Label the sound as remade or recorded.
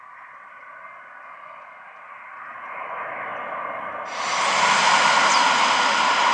recorded